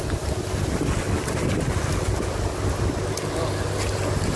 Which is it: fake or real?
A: real